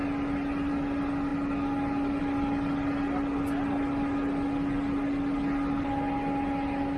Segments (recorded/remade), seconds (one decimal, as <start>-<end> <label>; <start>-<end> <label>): 0.0-7.0 recorded